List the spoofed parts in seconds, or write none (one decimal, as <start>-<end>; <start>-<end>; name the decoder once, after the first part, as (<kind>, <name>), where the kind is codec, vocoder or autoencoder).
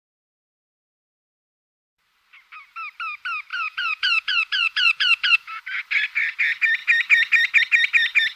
3.5-5.6 (vocoder, Vocos)